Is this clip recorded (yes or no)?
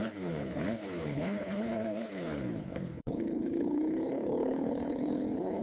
no